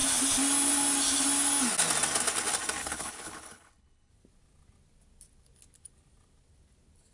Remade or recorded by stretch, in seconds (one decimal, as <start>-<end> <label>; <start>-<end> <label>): 0.0-2.8 recorded; 2.8-4.1 remade; 4.1-7.1 recorded